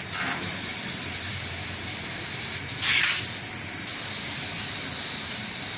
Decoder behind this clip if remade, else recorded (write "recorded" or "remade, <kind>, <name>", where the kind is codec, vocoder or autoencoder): recorded